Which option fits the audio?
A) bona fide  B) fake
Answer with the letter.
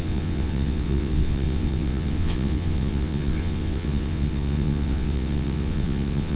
B